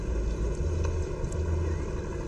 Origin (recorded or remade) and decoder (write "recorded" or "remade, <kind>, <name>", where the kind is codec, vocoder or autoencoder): recorded